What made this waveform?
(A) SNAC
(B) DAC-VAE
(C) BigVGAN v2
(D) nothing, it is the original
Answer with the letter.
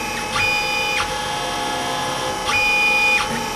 D